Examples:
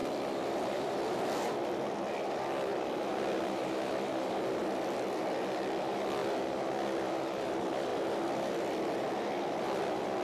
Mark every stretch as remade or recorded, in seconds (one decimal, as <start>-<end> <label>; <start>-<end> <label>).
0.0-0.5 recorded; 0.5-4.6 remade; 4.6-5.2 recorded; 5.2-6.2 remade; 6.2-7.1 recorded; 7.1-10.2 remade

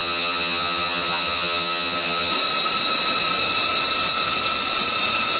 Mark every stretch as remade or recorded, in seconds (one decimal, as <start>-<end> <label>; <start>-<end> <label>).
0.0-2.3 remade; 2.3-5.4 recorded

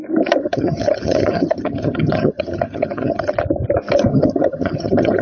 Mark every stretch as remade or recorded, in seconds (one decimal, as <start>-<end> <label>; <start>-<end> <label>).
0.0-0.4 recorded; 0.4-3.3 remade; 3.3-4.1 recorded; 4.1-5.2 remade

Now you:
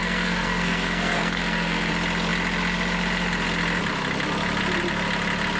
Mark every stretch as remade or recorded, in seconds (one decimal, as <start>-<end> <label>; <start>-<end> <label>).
0.0-1.9 remade; 1.9-5.6 recorded

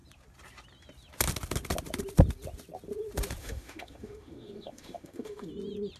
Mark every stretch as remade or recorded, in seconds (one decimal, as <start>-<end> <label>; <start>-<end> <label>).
0.0-3.4 recorded; 3.4-5.5 remade; 5.5-6.0 recorded

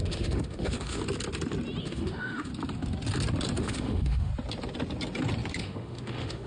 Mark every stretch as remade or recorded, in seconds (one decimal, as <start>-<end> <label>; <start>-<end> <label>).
0.0-1.0 remade; 1.0-1.8 recorded; 1.8-2.5 remade; 2.5-3.6 recorded; 3.6-4.3 remade; 4.3-5.6 recorded; 5.6-6.5 remade

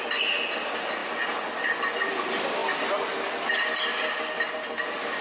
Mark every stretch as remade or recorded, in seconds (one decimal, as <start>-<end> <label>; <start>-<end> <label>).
0.0-5.2 recorded

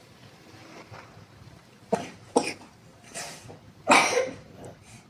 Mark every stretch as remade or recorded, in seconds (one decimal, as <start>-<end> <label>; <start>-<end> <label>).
0.0-0.6 recorded; 0.6-2.5 remade; 2.5-2.9 recorded; 2.9-5.1 remade